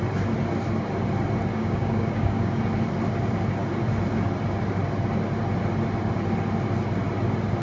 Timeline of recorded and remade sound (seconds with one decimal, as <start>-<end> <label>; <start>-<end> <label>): 0.0-1.5 recorded; 1.5-2.6 remade; 2.6-7.6 recorded